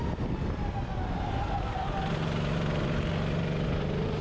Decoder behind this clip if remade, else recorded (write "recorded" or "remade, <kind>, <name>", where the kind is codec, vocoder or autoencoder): recorded